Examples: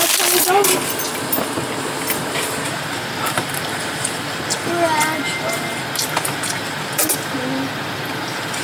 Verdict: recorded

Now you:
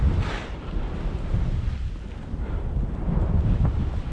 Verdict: recorded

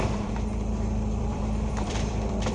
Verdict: remade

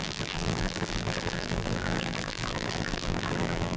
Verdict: remade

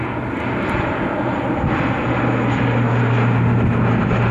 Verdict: recorded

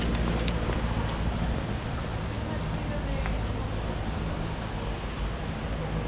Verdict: recorded